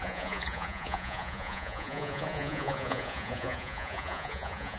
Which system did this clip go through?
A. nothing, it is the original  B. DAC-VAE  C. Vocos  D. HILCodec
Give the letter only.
C